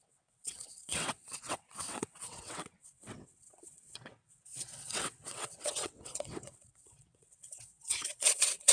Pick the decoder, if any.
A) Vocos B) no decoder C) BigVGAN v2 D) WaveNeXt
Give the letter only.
D